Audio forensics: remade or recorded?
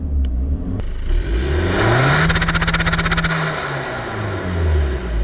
recorded